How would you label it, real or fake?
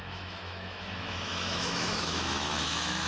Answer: fake